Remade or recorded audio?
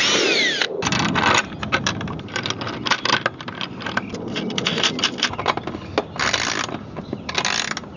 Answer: recorded